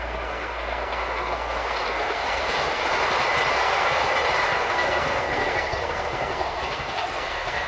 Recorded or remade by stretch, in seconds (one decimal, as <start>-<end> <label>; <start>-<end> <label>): 0.0-2.8 remade; 2.8-3.5 recorded; 3.5-4.0 remade; 4.0-4.6 recorded; 4.6-7.7 remade